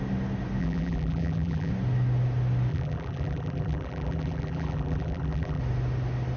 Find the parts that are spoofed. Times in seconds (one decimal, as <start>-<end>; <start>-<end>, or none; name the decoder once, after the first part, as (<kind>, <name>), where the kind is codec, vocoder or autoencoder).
0.6-1.7 (vocoder, BigVGAN v2); 2.7-5.6